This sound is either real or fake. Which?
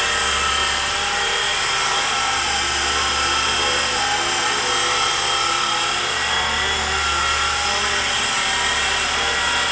real